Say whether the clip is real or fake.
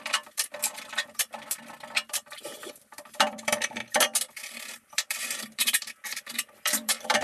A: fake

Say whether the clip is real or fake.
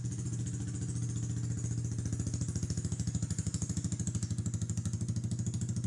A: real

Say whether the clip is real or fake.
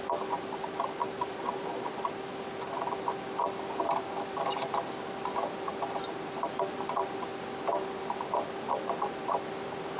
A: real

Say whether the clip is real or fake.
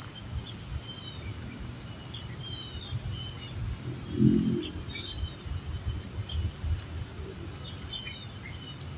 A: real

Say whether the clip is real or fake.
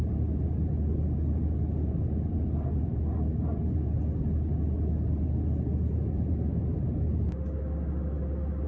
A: real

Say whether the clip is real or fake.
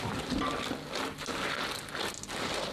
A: real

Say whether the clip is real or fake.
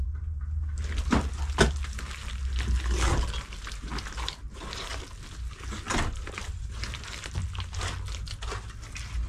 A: real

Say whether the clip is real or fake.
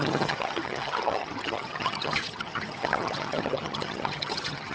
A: fake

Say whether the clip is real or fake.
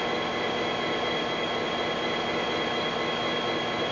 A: real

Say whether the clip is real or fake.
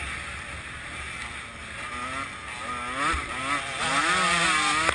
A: real